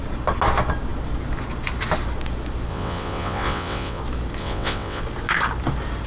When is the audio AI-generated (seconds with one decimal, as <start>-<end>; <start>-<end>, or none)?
2.7-4.0; 4.4-5.0